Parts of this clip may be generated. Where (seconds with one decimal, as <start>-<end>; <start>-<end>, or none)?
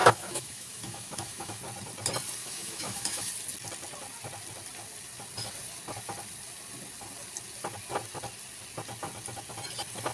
0.0-1.6; 2.4-3.3